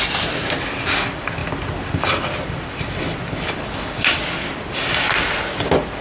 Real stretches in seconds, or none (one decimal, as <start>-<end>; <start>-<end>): 1.4-1.9